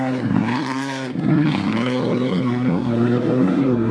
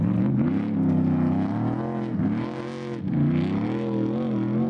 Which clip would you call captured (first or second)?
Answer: second